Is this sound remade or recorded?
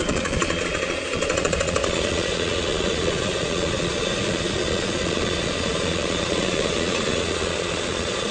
remade